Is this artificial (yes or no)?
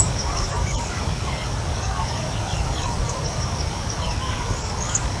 yes